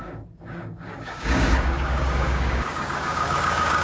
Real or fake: fake